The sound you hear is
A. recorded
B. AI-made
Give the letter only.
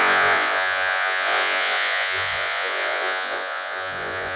B